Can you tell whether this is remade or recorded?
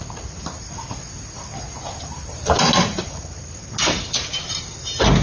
recorded